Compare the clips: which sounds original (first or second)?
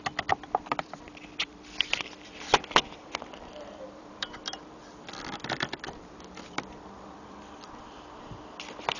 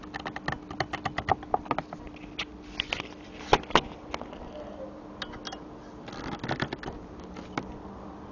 second